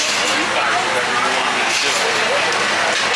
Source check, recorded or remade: recorded